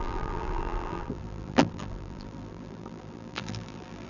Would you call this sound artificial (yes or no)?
yes